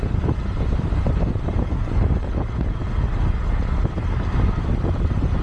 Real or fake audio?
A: real